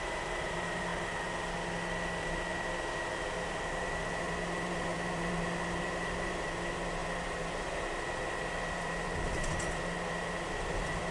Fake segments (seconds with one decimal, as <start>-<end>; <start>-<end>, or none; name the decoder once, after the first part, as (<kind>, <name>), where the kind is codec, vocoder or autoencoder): 0.0-0.9 (vocoder, BigVGAN v2); 2.2-11.1